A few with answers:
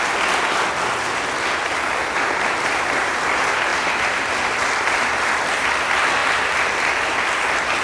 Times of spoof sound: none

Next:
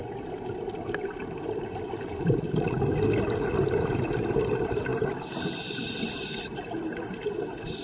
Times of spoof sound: none

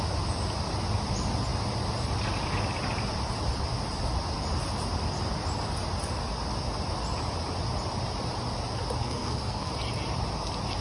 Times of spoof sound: 9.0-9.7 (codec, SNAC)

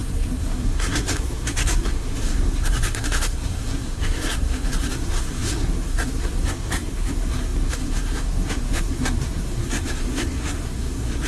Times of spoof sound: 0.0-11.3 (codec, SNAC)

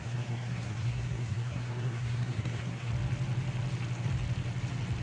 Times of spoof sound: 0.0-2.9 (codec, SNAC)

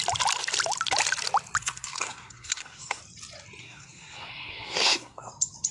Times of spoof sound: 1.6-3.0 (codec, SNAC); 3.6-5.3

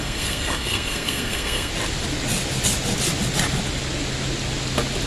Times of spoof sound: 0.0-1.7 (codec, SNAC)